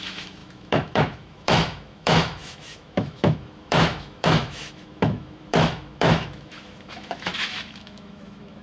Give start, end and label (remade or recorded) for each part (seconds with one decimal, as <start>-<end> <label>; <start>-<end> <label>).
0.0-8.6 remade

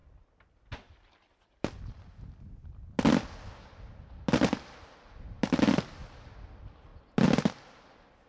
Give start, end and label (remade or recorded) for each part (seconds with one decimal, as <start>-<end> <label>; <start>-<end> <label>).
0.0-8.3 recorded

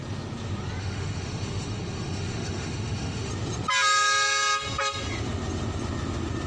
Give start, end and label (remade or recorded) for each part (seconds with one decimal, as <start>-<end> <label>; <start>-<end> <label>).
0.0-0.8 recorded; 0.8-3.3 remade; 3.3-6.5 recorded

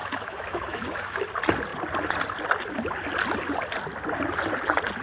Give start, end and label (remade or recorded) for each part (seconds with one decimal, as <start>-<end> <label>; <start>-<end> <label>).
0.0-1.2 remade; 1.2-5.0 recorded